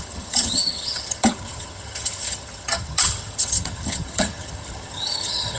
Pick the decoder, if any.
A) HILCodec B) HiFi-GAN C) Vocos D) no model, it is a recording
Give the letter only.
B